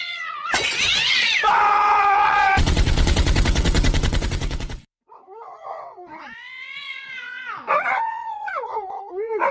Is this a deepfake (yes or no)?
yes